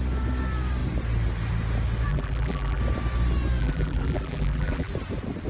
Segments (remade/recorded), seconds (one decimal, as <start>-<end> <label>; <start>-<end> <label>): 0.0-2.1 recorded; 2.1-2.8 remade; 2.8-3.6 recorded; 3.6-4.9 remade; 4.9-5.5 recorded